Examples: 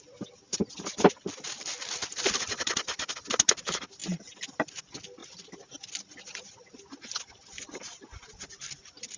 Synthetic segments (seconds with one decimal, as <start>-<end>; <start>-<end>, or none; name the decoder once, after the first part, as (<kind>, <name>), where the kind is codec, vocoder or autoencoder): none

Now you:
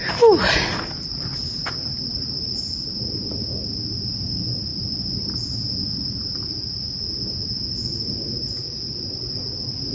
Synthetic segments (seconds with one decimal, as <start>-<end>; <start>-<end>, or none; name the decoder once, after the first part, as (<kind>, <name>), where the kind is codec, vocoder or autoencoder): none

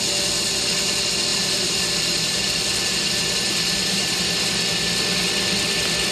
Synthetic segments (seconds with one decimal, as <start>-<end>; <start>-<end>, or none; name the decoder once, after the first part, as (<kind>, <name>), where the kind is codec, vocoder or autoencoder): 1.3-4.2 (vocoder, BigVGAN v2)

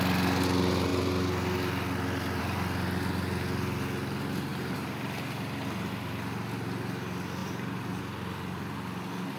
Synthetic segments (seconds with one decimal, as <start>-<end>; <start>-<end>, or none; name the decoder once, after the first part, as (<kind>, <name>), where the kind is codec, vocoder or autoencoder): 4.5-5.9 (vocoder, BigVGAN v2); 7.4-8.0

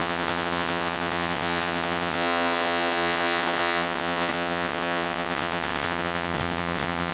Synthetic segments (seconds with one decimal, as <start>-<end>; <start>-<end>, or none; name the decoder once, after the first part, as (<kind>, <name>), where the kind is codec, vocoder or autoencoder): 0.0-7.1 (vocoder, WaveNeXt)

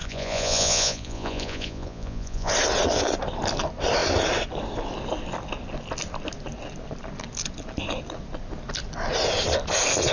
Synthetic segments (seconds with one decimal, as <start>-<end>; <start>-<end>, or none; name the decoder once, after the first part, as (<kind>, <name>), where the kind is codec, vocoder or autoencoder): 0.0-2.5 (vocoder, Vocos)